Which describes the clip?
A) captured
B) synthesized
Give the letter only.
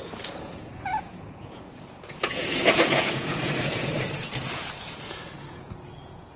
B